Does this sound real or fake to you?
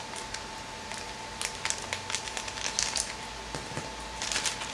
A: real